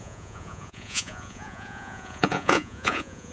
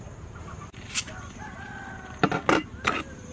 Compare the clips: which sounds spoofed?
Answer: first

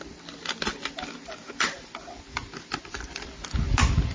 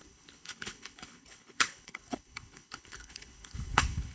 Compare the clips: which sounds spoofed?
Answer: second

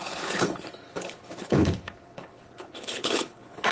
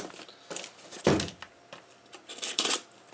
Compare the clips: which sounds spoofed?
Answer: first